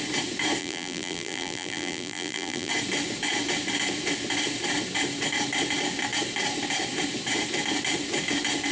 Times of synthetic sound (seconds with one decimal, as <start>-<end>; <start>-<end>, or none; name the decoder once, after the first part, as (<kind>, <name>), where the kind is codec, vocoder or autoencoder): 0.6-2.7 (vocoder, BigVGAN v2)